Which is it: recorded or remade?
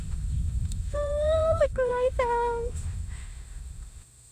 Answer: remade